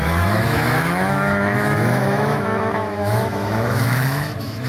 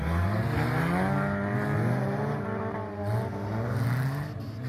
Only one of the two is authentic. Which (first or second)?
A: second